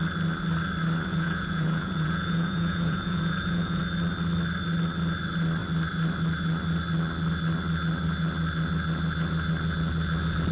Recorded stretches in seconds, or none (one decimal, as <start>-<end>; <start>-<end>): 0.0-1.1; 3.8-10.5